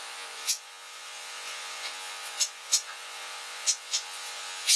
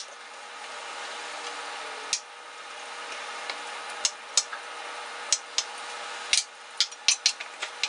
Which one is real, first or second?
second